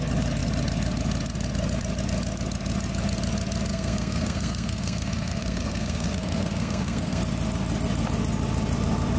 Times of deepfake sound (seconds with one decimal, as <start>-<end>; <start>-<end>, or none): 3.7-7.2